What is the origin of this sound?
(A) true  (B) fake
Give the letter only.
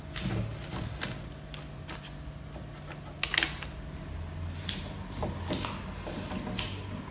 A